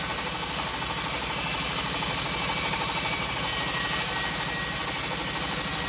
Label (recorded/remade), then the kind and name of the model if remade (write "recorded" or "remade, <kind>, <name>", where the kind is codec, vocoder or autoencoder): recorded